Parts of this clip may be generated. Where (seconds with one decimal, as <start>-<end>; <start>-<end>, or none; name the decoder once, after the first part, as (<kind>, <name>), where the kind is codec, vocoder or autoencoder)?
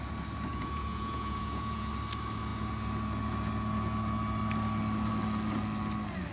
0.5-1.9 (vocoder, Vocos)